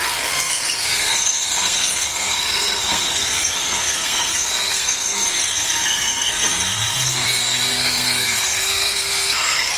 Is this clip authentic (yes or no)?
no